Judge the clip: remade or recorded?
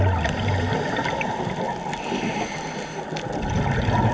recorded